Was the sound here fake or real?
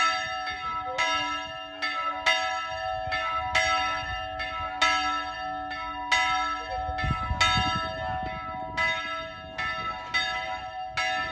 real